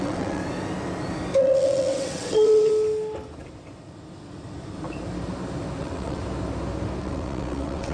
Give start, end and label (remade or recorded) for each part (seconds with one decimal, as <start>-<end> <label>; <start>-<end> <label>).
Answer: 0.0-0.4 remade; 0.4-1.4 recorded; 1.4-2.7 remade; 2.7-5.8 recorded; 5.8-6.2 remade; 6.2-7.0 recorded; 7.0-7.9 remade